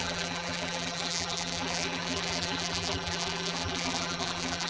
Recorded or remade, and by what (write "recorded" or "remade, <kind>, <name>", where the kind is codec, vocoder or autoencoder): remade, vocoder, BigVGAN v2